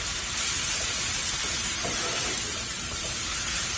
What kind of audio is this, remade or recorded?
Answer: remade